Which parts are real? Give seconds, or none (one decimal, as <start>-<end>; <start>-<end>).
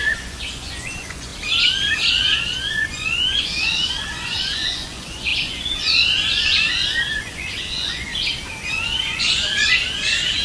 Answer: 1.3-2.6; 8.1-8.7